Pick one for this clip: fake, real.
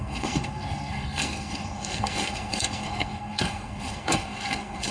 fake